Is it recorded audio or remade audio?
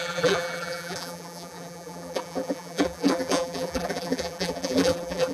remade